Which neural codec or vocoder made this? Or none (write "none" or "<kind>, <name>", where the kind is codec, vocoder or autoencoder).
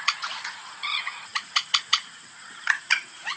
vocoder, Vocos